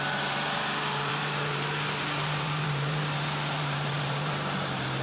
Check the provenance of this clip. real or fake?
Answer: fake